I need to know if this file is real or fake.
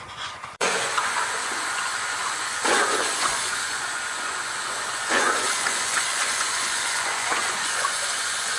fake